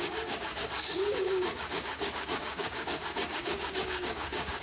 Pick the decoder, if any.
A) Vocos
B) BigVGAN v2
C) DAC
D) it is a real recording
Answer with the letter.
C